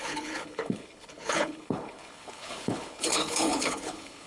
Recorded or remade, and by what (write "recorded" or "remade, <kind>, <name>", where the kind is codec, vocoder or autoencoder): remade, codec, HILCodec